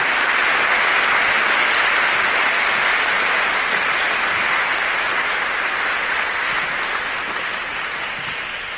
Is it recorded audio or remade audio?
recorded